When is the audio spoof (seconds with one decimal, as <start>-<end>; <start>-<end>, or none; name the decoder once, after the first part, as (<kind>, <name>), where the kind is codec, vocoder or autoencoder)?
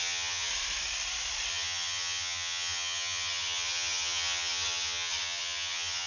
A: 0.0-0.5 (vocoder, HiFi-GAN); 1.5-6.1